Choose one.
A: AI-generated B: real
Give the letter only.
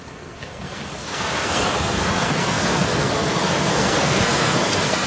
A